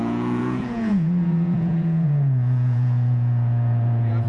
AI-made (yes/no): yes